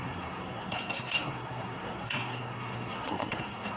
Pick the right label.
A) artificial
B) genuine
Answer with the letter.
A